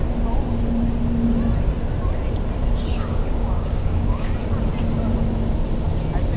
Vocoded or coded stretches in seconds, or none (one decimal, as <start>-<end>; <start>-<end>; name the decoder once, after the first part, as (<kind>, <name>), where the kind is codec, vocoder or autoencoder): 2.9-4.3 (codec, DAC)